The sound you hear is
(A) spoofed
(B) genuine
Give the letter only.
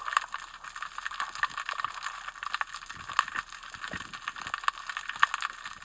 B